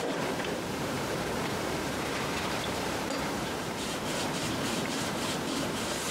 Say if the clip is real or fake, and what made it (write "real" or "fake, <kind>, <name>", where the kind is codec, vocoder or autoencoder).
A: fake, vocoder, BigVGAN v2